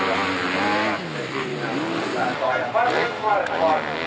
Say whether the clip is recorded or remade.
recorded